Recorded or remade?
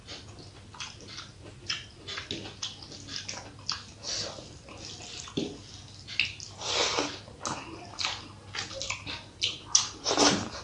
recorded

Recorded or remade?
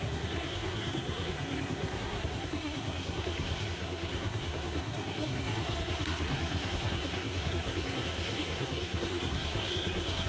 remade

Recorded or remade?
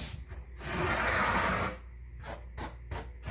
recorded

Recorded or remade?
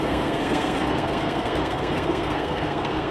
remade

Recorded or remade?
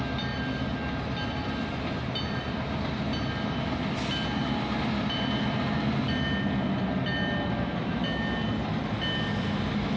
recorded